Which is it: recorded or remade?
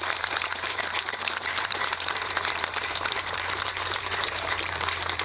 remade